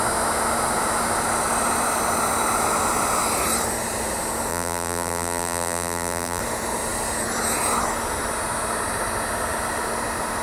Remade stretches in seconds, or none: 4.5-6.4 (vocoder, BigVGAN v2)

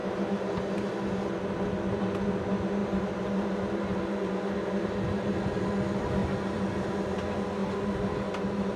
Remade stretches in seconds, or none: 0.0-0.9 (vocoder, BigVGAN v2); 6.2-6.9; 7.6-8.8

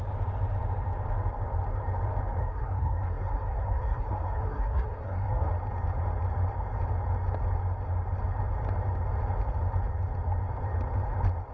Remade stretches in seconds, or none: 2.4-5.5 (codec, SNAC)

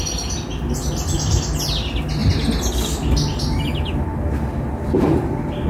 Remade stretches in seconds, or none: none

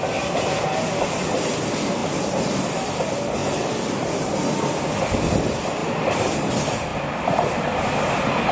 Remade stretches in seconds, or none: 2.0-2.7 (vocoder, BigVGAN v2); 5.8-6.5

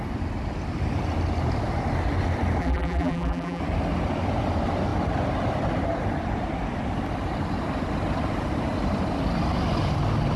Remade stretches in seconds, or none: 2.6-3.6 (vocoder, BigVGAN v2)